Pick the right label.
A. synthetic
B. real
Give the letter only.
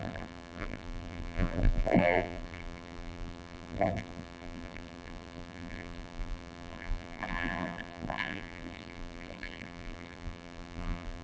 A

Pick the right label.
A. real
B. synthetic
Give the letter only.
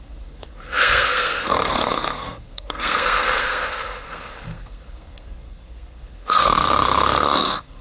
B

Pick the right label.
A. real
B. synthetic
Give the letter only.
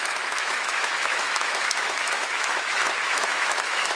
B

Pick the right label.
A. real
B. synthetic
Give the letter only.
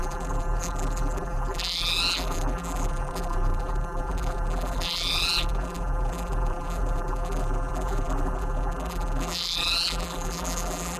B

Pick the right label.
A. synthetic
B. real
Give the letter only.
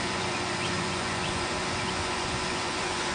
A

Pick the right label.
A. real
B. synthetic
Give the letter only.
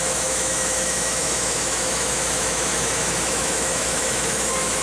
B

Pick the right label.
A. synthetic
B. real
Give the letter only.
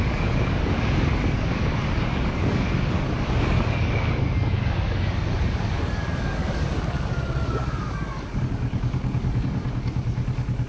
A